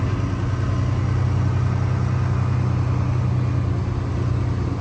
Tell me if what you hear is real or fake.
real